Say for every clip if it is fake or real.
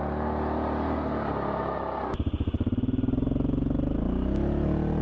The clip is real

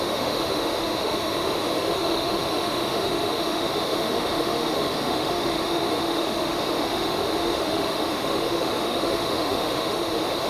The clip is fake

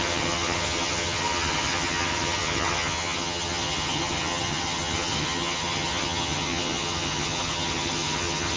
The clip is fake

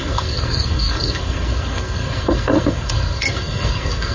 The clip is fake